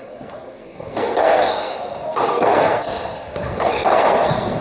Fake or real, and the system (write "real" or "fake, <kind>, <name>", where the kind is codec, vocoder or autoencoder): fake, codec, SNAC